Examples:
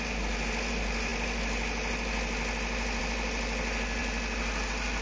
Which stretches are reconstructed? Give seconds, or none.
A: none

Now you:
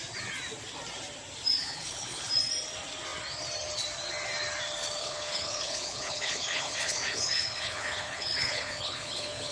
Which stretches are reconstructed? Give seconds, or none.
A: 1.6-2.3 (codec, HILCodec); 5.0-9.5

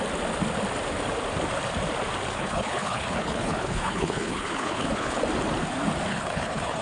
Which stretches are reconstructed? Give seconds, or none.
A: 2.3-5.2 (codec, HILCodec); 6.1-6.8

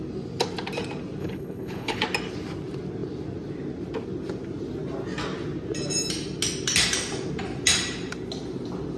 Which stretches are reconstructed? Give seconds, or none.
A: 1.2-2.0 (codec, HILCodec)

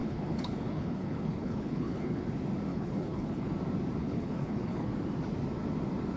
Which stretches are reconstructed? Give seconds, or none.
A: 0.0-2.2 (codec, HILCodec); 2.7-3.5; 4.0-4.9